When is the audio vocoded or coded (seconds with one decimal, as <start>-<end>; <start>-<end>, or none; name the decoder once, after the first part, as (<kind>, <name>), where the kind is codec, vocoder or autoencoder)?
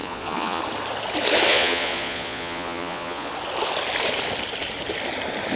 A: 0.0-0.6 (vocoder, Vocos); 1.5-3.3